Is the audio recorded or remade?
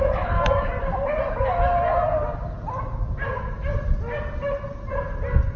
recorded